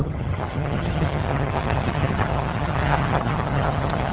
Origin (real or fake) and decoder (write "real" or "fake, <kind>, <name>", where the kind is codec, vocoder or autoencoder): fake, vocoder, HiFi-GAN